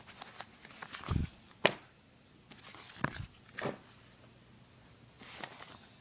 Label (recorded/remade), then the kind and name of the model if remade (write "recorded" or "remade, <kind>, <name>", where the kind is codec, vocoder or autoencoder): recorded